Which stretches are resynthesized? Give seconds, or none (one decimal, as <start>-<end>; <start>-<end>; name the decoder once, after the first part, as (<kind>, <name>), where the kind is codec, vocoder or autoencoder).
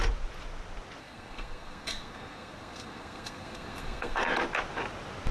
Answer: 1.0-4.2 (codec, SNAC)